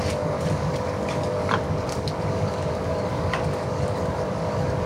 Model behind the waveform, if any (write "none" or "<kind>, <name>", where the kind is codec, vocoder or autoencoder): codec, DAC